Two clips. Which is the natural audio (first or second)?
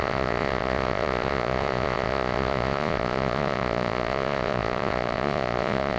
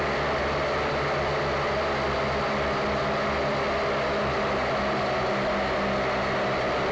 second